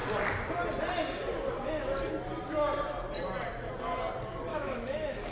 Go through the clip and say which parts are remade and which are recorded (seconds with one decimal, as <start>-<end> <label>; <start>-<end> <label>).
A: 0.0-4.5 recorded; 4.5-5.3 remade